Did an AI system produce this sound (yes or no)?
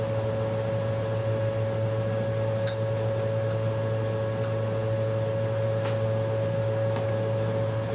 no